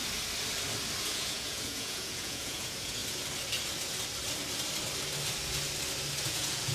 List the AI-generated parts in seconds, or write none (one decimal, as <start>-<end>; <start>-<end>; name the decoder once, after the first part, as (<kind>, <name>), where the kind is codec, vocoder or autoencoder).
1.0-3.0 (vocoder, Vocos); 6.3-6.7